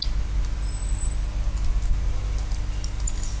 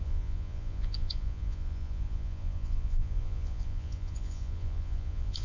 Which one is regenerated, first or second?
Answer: second